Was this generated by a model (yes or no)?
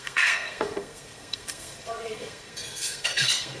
yes